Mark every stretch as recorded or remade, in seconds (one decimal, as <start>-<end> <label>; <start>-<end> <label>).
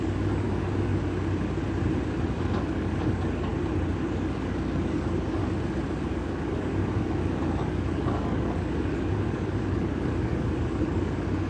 0.0-0.9 remade; 0.9-2.3 recorded; 2.3-3.5 remade; 3.5-4.0 recorded; 4.0-5.4 remade; 5.4-6.1 recorded; 6.1-11.5 remade